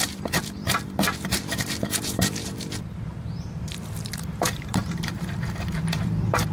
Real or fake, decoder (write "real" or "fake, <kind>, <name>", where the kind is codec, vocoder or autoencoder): fake, vocoder, BigVGAN v2